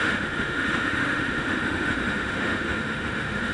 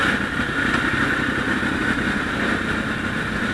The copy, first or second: first